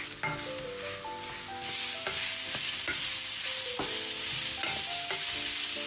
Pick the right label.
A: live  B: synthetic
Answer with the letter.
A